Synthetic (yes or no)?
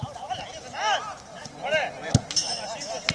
no